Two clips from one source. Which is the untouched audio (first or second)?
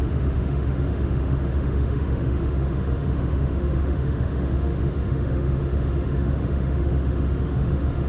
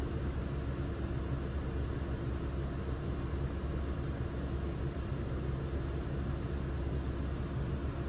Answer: second